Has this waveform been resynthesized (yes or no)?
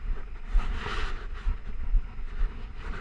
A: no